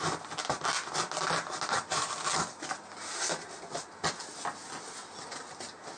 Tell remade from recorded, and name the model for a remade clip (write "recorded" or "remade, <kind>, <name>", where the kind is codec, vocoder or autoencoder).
recorded